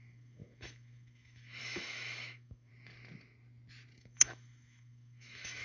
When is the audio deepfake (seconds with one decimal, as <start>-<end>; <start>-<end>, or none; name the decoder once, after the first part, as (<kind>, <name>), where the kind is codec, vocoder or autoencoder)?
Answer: 0.0-2.7 (autoencoder, DAC-VAE); 4.0-5.6